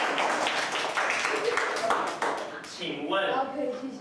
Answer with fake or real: real